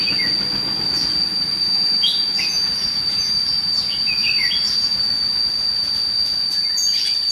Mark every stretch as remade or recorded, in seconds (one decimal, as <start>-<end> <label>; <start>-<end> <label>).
0.0-1.3 recorded; 1.3-5.1 remade; 5.1-7.3 recorded